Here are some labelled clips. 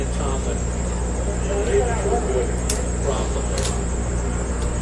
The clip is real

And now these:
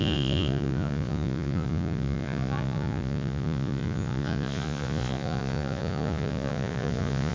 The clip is fake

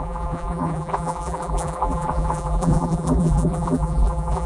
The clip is fake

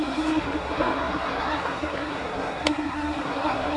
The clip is fake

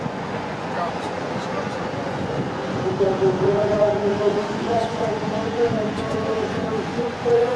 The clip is fake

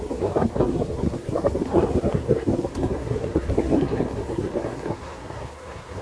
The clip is fake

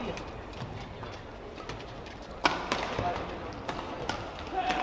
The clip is real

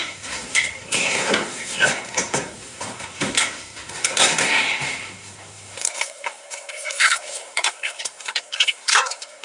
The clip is fake